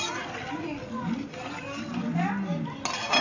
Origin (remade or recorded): recorded